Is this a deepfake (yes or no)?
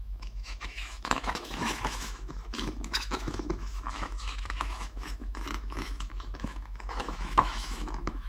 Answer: yes